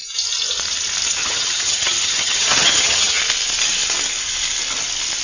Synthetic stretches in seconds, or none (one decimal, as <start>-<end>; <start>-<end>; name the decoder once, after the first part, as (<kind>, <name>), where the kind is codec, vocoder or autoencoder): 1.2-3.2 (vocoder, HiFi-GAN)